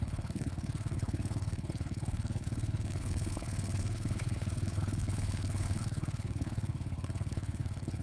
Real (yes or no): no